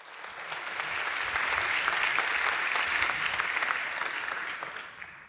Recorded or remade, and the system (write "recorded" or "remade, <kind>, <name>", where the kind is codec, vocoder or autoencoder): recorded